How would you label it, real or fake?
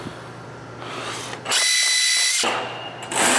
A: real